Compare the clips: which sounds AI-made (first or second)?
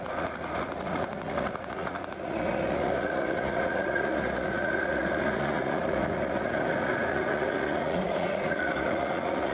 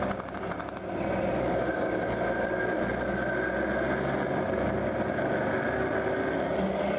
first